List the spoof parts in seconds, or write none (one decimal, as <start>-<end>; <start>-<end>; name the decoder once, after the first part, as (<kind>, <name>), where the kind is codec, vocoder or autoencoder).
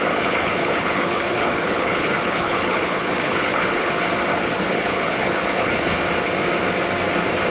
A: 0.0-3.9 (codec, HILCodec); 4.3-6.0